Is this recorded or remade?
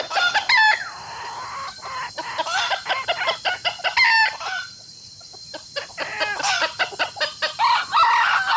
recorded